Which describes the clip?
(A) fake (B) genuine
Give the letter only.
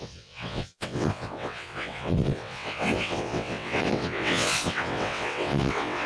A